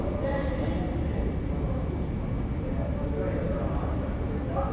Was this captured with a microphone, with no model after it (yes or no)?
yes